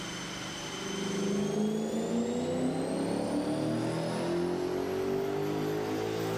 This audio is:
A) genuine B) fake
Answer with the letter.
A